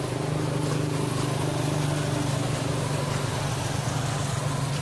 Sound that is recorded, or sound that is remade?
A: recorded